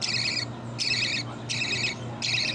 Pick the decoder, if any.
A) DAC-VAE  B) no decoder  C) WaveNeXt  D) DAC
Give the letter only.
B